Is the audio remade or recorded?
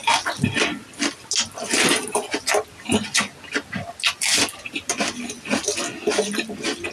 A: recorded